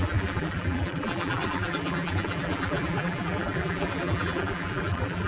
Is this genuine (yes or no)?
no